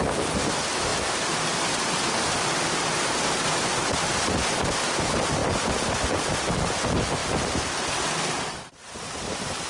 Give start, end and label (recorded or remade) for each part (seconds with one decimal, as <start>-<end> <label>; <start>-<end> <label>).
0.0-9.7 recorded

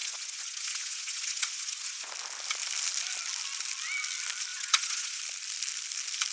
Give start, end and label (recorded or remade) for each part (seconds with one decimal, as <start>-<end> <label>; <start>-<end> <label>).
0.0-2.1 remade; 2.1-4.5 recorded; 4.5-5.2 remade; 5.2-6.3 recorded

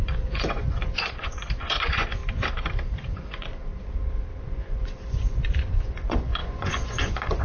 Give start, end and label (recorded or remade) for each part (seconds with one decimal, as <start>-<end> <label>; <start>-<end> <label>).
0.0-2.2 remade; 2.2-3.1 recorded; 3.1-3.7 remade; 3.7-4.4 recorded; 4.4-7.4 remade

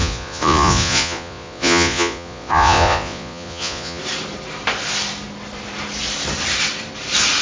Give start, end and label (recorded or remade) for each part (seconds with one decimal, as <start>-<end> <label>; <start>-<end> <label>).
0.0-4.0 remade; 4.0-7.4 recorded